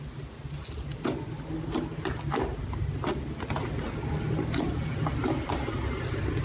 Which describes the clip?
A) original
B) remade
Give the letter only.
A